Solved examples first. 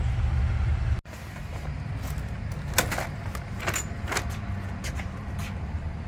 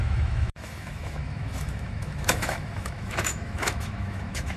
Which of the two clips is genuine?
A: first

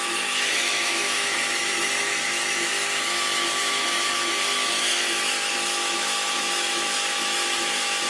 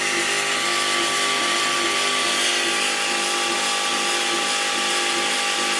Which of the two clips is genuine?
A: second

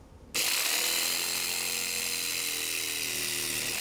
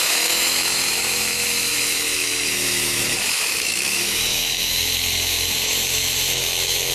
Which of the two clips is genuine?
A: first